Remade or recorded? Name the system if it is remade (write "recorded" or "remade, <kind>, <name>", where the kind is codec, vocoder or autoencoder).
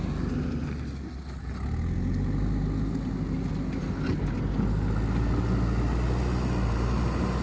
recorded